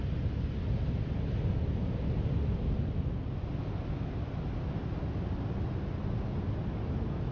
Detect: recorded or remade recorded